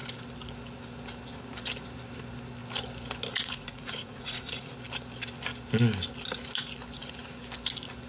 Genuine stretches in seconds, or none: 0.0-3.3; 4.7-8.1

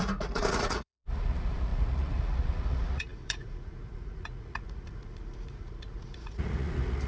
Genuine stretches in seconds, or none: none

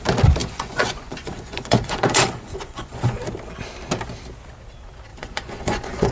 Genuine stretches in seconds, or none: 0.0-0.4; 3.2-5.1